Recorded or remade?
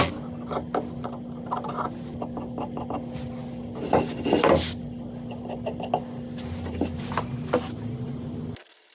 recorded